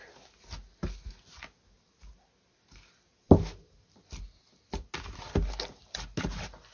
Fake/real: real